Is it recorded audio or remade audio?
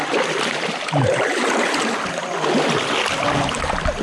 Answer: recorded